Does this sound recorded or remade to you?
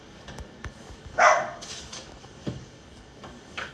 remade